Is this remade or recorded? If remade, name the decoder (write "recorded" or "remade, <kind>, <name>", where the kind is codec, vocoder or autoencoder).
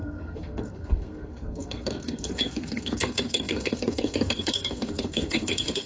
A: remade, codec, SNAC